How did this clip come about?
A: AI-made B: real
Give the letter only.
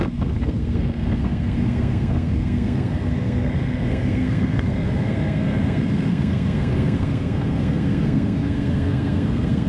A